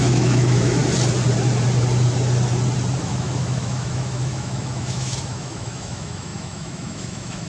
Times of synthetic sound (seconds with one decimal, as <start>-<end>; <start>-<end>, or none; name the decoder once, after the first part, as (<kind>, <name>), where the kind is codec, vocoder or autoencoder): 0.0-0.8 (autoencoder, DAC-VAE); 3.0-7.5